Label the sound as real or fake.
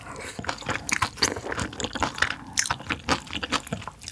real